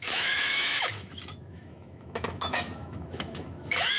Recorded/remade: remade